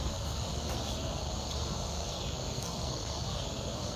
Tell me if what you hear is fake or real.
fake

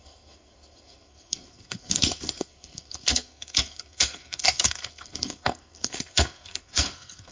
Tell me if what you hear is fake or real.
fake